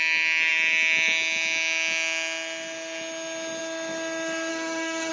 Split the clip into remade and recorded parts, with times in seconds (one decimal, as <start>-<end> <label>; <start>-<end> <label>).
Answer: 0.0-4.5 recorded; 4.5-5.1 remade